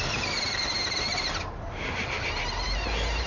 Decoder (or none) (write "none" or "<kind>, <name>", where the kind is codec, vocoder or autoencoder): none